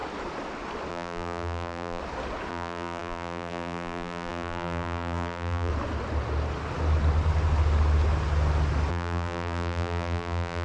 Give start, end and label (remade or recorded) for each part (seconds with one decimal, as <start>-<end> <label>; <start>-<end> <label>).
0.0-0.9 recorded; 0.9-2.0 remade; 2.0-2.5 recorded; 2.5-5.7 remade; 5.7-8.9 recorded; 8.9-10.6 remade